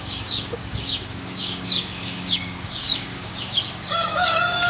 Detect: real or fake fake